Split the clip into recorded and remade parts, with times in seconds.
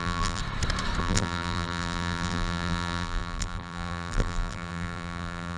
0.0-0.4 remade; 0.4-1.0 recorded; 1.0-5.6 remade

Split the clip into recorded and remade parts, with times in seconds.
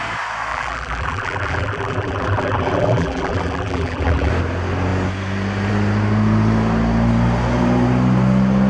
0.0-0.5 recorded; 0.5-4.3 remade; 4.3-8.7 recorded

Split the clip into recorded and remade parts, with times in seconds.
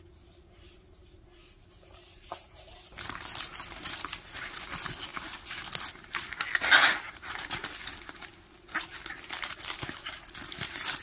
0.0-1.4 recorded; 1.4-2.9 remade; 2.9-11.0 recorded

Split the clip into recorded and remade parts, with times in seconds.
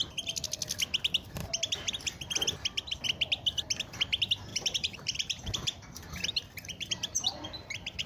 0.0-1.4 recorded; 1.4-1.9 remade; 1.9-4.5 recorded; 4.5-8.1 remade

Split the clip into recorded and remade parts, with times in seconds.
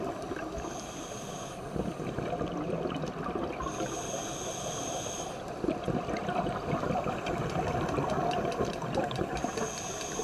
0.0-10.2 recorded